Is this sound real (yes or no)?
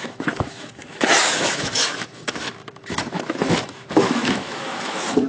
no